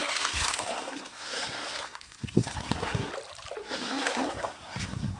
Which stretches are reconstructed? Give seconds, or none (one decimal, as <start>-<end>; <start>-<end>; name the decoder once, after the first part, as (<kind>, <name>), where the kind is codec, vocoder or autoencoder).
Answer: 0.0-3.1 (codec, SNAC); 3.6-5.2

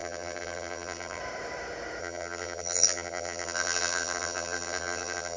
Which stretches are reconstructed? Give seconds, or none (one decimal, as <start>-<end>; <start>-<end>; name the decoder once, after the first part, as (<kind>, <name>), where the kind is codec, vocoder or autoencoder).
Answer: 0.0-1.2 (vocoder, BigVGAN v2); 2.0-5.4

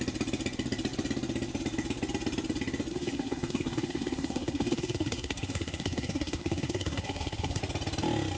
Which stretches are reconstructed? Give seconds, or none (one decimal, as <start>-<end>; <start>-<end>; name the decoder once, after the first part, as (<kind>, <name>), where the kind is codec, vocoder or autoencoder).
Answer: 2.9-7.6 (codec, SNAC)

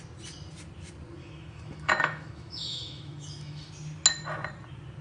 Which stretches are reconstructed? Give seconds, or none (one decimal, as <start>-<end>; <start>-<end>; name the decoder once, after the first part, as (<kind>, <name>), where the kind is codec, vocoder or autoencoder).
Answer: 1.2-3.7 (autoencoder, DAC-VAE)

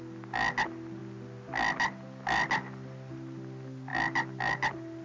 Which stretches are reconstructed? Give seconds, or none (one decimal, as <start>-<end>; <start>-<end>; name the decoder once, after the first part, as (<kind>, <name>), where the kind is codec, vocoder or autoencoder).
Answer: none

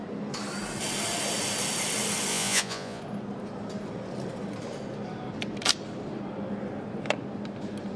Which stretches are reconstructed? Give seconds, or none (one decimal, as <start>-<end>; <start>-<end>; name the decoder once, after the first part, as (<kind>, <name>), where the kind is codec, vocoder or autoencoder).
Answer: 2.3-3.0 (vocoder, Vocos)

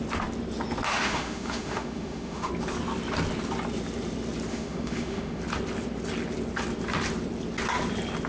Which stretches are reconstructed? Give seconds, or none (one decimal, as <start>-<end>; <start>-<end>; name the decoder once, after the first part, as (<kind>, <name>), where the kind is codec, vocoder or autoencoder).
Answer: 0.9-2.5 (autoencoder, DAC-VAE); 4.5-5.4

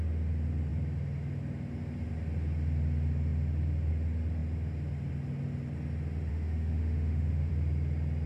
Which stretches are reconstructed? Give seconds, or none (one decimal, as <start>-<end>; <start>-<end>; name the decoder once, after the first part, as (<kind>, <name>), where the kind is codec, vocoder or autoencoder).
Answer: 6.3-7.5 (autoencoder, DAC-VAE)